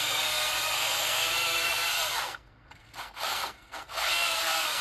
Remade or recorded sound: remade